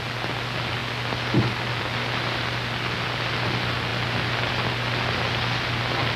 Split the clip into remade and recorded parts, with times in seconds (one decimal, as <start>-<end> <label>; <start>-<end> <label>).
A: 0.0-6.2 recorded